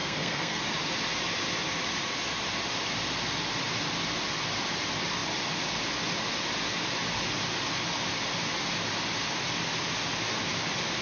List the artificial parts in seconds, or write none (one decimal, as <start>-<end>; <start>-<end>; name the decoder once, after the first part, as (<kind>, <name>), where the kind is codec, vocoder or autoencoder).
0.0-0.6 (codec, SNAC)